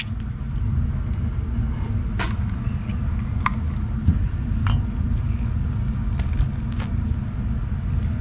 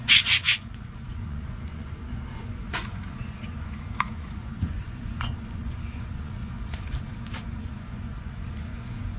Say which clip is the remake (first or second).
second